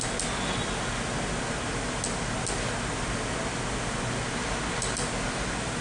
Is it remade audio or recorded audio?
recorded